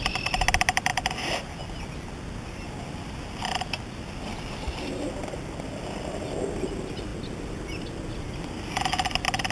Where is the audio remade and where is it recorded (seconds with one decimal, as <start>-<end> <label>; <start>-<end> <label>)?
0.0-9.5 recorded